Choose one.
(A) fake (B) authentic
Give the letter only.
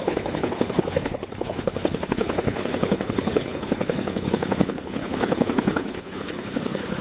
A